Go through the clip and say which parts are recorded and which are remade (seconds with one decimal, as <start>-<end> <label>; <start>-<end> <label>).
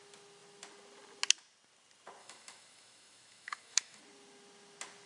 0.0-2.2 recorded; 2.2-4.0 remade; 4.0-5.1 recorded